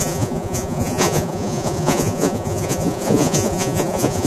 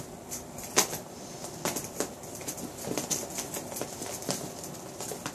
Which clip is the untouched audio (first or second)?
second